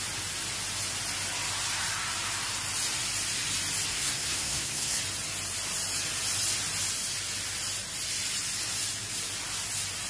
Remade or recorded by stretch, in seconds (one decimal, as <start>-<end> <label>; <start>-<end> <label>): 0.0-3.9 recorded; 3.9-5.0 remade; 5.0-10.1 recorded